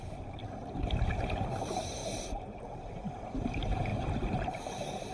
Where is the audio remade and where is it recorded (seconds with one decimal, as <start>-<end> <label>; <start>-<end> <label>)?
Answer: 0.0-5.1 remade